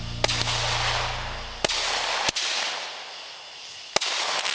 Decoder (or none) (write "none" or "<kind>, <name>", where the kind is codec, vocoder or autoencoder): none